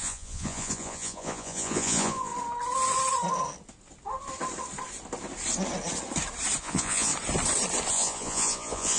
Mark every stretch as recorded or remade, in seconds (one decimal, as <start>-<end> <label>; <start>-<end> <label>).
0.0-2.3 remade; 2.3-6.6 recorded; 6.6-7.1 remade; 7.1-7.9 recorded; 7.9-9.0 remade